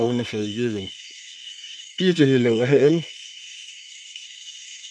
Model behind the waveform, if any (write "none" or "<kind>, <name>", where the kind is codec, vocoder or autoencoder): codec, SNAC